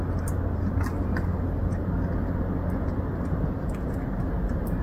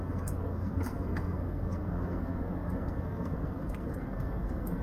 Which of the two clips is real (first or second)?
first